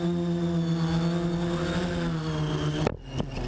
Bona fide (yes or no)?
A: yes